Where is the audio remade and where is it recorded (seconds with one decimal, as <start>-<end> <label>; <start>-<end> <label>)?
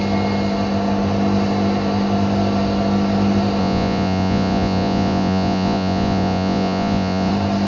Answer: 0.0-3.6 recorded; 3.6-7.3 remade; 7.3-7.7 recorded